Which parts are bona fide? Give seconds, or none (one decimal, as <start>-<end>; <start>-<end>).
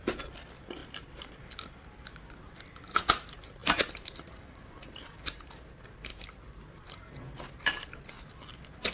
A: 0.0-3.6; 5.5-6.1; 6.9-8.9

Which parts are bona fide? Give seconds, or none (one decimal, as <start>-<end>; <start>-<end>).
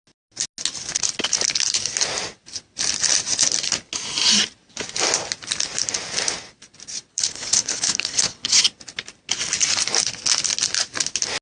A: 0.0-7.1; 8.6-11.4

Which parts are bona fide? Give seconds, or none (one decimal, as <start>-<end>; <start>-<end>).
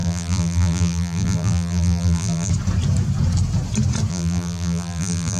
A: 2.5-4.1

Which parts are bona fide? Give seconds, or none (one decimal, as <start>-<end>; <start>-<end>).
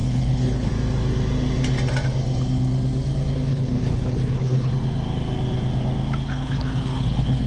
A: 0.7-3.5; 4.7-6.3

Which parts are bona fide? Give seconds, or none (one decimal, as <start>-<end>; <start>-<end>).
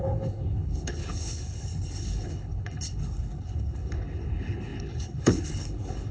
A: none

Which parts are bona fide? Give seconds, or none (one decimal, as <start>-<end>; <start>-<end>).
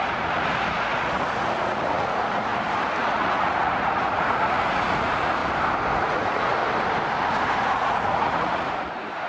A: 2.5-3.0; 5.4-6.0; 6.6-7.6